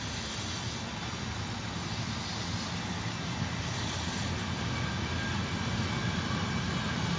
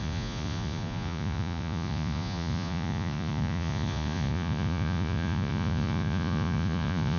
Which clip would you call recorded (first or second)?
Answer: first